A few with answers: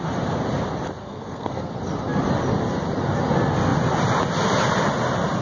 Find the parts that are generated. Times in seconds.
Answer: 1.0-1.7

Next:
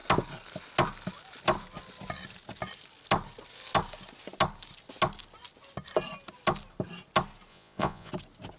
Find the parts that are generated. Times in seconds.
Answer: 7.5-8.1